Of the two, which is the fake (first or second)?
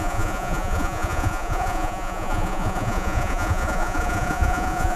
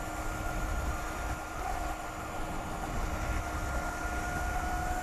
first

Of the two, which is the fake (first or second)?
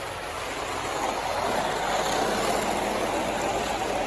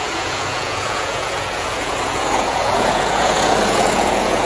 second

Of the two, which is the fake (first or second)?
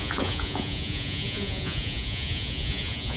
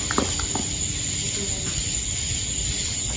first